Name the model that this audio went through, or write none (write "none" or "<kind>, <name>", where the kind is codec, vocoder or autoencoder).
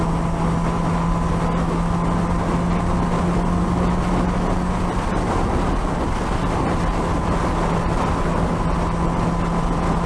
none